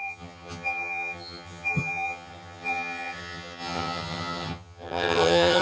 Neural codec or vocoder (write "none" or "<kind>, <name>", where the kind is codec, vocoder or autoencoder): vocoder, HiFi-GAN